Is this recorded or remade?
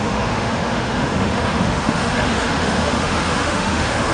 remade